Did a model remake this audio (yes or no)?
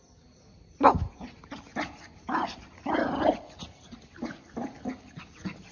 no